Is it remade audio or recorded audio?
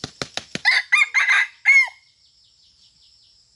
recorded